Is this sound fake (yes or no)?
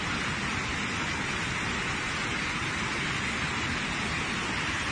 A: no